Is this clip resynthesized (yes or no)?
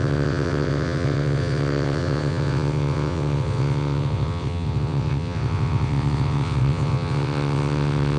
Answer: yes